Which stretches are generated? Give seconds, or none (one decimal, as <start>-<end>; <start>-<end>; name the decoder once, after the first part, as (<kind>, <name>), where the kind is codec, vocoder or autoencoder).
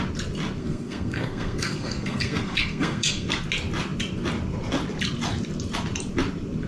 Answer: 0.6-3.3 (codec, SNAC)